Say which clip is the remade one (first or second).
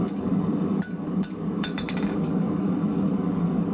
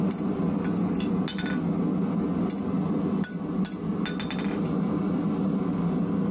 first